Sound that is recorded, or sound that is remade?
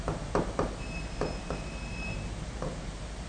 remade